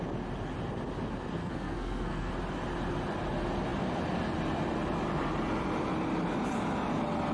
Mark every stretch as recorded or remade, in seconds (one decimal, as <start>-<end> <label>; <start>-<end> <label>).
0.0-1.4 recorded; 1.4-2.3 remade; 2.3-7.3 recorded